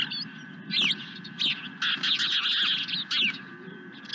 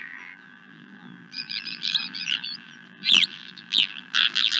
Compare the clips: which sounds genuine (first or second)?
first